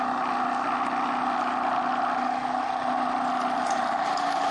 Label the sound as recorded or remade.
recorded